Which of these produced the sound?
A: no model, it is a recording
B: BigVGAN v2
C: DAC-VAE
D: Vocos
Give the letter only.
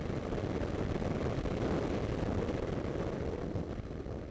A